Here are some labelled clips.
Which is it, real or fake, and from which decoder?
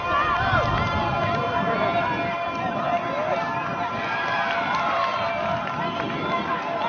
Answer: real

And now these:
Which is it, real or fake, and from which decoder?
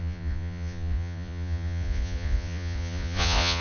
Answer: fake, vocoder, Vocos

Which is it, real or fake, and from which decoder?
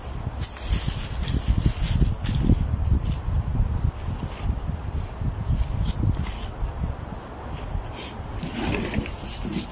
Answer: real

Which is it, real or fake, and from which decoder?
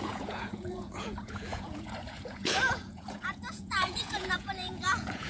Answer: fake, vocoder, Vocos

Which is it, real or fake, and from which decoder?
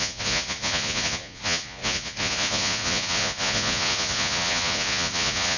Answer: fake, vocoder, Vocos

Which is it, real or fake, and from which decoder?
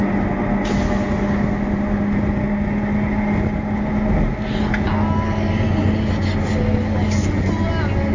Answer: real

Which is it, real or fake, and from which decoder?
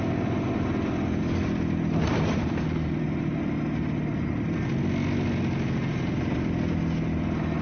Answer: real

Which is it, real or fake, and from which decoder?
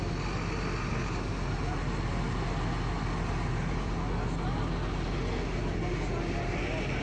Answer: real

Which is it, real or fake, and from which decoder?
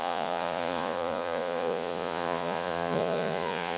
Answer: fake, vocoder, Vocos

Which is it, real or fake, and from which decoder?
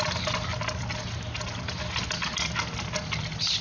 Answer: real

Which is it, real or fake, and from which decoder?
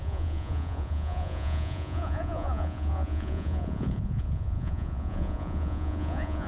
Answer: fake, vocoder, Vocos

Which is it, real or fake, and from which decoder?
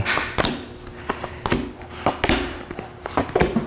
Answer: real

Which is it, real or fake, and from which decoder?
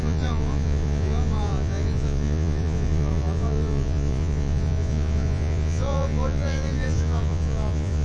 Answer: fake, vocoder, Vocos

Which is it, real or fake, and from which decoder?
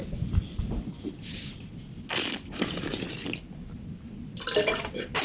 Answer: real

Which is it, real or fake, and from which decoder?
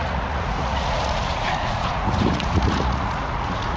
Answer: fake, vocoder, Vocos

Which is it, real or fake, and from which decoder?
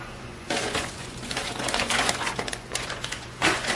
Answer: fake, vocoder, Vocos